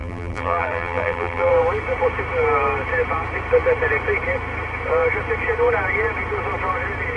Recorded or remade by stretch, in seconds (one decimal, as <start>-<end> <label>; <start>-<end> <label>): 0.0-1.5 remade; 1.5-7.2 recorded